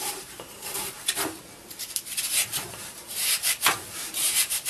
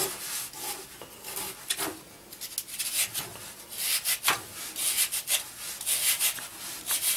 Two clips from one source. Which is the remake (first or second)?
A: first